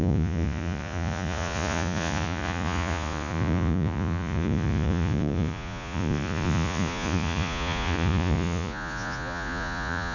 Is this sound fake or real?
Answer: fake